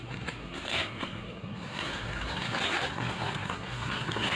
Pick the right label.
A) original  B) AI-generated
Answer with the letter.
B